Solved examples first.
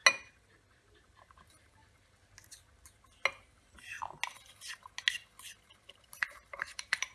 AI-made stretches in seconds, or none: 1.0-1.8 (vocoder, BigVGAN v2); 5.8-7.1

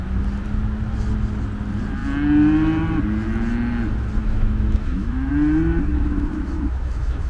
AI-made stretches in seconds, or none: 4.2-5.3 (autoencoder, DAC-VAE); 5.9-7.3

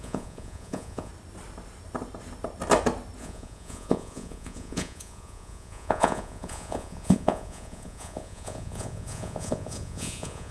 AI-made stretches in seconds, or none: 0.0-1.1 (vocoder, Vocos); 3.2-10.5

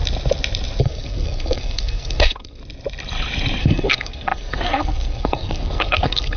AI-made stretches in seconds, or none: 0.8-2.6 (codec, SNAC); 3.6-6.4

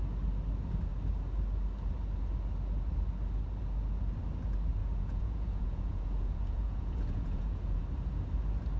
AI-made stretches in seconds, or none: 4.8-7.8 (vocoder, Vocos)

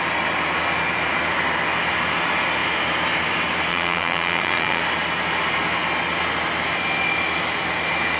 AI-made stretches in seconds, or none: 3.7-4.8 (vocoder, Vocos)

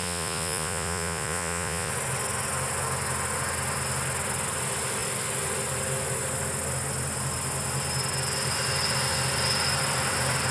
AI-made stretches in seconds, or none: 0.0-1.9 (vocoder, Vocos)